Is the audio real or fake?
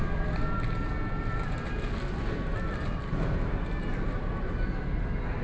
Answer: real